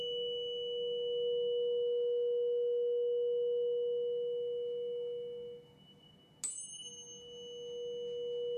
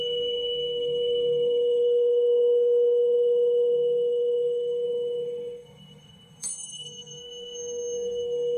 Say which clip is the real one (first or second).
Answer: first